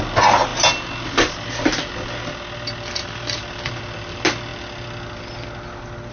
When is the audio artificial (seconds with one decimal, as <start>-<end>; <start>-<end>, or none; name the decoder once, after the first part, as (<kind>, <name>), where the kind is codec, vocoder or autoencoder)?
none